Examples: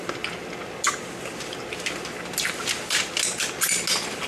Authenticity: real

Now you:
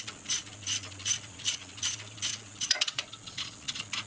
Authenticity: fake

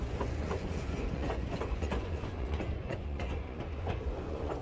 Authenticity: fake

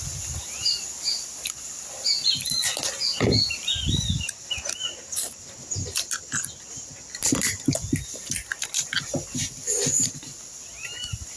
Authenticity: real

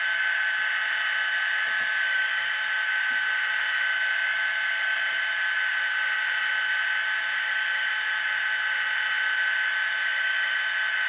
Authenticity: real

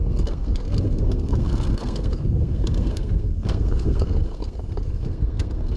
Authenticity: fake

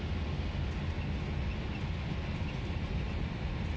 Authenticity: real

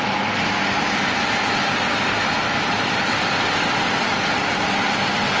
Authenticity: real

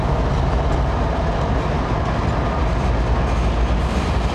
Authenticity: real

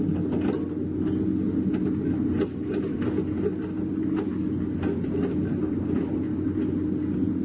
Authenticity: real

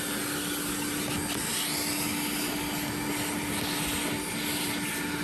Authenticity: real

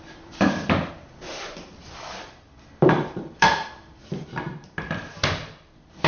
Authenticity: fake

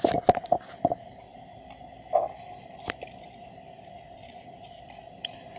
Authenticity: real